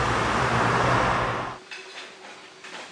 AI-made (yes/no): no